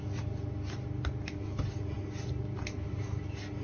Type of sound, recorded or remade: recorded